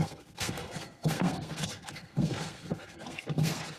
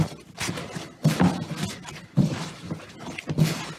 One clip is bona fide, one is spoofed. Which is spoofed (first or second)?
first